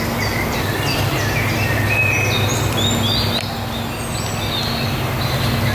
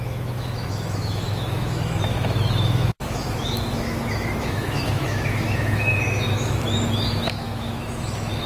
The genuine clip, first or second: first